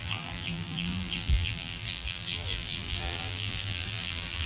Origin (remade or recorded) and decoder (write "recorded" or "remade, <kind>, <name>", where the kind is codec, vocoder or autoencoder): remade, vocoder, BigVGAN v2